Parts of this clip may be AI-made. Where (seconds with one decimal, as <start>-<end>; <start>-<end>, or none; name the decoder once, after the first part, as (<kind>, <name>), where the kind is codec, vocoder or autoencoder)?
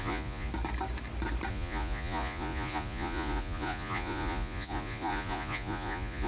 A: 0.0-0.5 (vocoder, Vocos); 1.5-6.3